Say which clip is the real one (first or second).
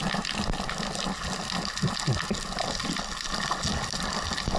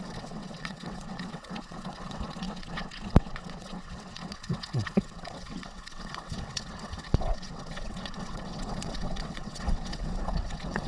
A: first